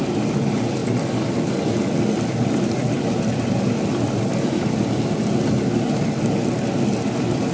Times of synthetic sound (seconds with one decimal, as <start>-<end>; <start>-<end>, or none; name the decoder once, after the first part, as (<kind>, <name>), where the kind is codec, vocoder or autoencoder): 0.8-4.7 (vocoder, BigVGAN v2)